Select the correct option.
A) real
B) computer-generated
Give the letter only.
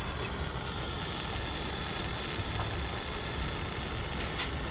A